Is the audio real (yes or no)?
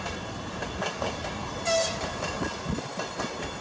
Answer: yes